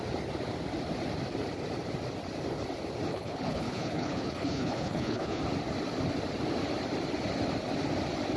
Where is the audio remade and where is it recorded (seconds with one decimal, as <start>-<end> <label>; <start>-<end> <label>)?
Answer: 0.0-3.1 recorded; 3.1-5.4 remade; 5.4-8.4 recorded